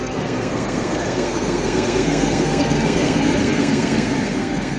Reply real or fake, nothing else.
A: fake